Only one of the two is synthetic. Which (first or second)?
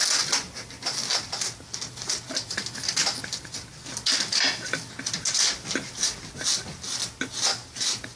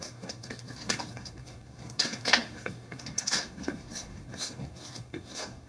second